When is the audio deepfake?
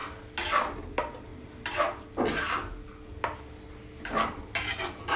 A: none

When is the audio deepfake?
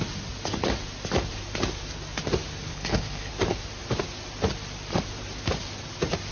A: 2.7-3.3 (codec, HILCodec)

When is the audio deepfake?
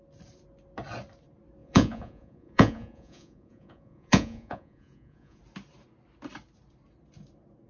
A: 1.6-5.4 (vocoder, Vocos)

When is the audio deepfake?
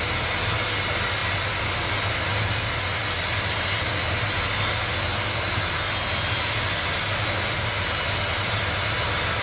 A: none